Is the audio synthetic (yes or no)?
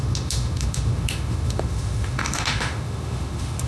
yes